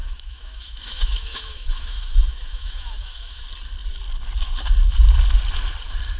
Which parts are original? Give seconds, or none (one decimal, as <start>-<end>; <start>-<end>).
3.4-6.2